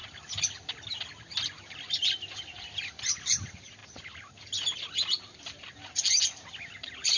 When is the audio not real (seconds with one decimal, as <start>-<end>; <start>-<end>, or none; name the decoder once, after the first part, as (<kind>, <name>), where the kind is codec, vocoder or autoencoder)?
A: none